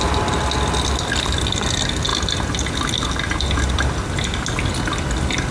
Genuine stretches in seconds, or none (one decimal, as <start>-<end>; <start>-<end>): 0.0-5.5